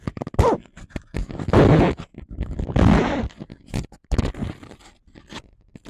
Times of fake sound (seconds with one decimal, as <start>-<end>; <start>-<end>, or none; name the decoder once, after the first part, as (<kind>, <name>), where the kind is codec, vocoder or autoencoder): none